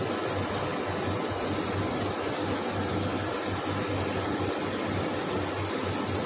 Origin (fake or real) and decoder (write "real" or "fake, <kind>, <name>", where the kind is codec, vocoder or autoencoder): real